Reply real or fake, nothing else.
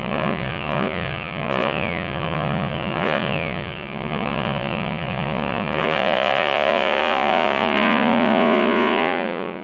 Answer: fake